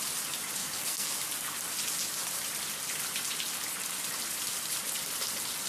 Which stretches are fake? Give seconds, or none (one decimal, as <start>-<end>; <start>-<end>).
0.6-1.2